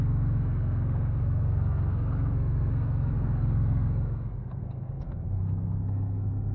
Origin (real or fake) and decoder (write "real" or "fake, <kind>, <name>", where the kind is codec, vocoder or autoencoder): fake, codec, SNAC